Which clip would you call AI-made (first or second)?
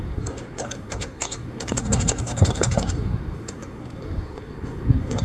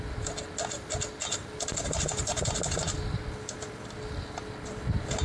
first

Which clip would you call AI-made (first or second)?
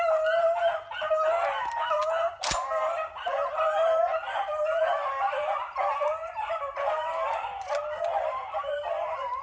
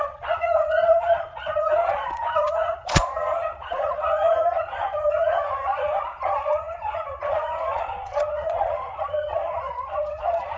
second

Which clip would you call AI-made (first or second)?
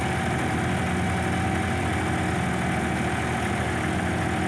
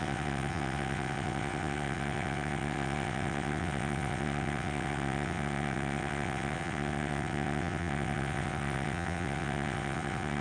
second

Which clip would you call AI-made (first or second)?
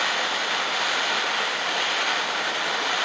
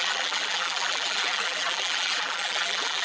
second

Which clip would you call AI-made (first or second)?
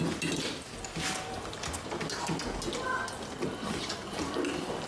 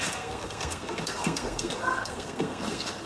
second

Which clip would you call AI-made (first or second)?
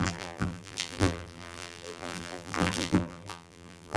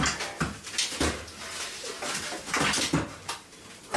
first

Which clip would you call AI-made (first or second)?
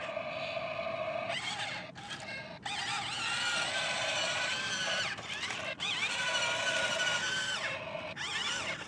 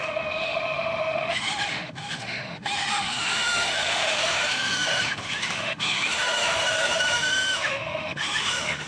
second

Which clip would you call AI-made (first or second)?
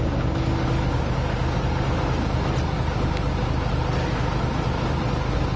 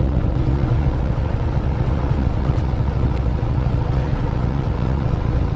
second